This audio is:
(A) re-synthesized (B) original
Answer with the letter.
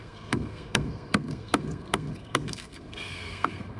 A